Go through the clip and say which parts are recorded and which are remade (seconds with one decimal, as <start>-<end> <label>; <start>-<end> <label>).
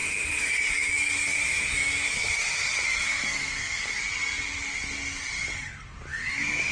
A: 0.0-4.0 remade; 4.0-6.1 recorded; 6.1-6.7 remade